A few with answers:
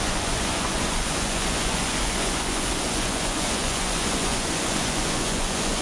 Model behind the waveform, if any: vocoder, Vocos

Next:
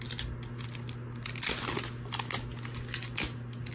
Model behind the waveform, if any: none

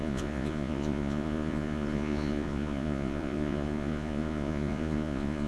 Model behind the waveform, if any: vocoder, Vocos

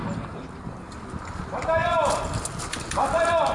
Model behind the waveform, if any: none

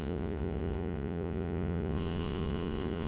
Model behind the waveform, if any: vocoder, Vocos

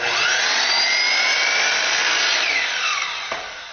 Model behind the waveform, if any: none